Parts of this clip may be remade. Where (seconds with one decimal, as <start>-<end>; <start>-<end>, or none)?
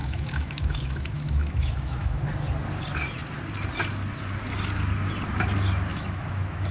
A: 0.0-2.2; 5.9-6.7